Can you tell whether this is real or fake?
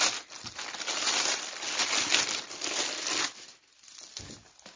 real